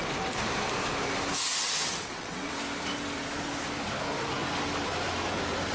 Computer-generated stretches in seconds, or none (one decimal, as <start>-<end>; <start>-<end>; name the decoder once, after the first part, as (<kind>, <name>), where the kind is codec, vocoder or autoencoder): 1.5-2.5 (vocoder, WaveNeXt)